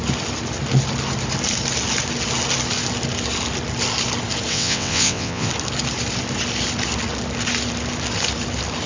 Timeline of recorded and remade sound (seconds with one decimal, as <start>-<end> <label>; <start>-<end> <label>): 0.0-4.5 recorded; 4.5-5.5 remade; 5.5-8.9 recorded